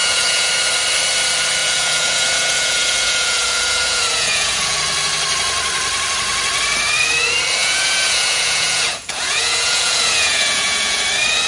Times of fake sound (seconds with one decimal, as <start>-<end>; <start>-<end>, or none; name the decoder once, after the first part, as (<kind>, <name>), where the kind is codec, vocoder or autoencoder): 0.0-0.5 (vocoder, Vocos); 1.6-4.8; 7.6-11.0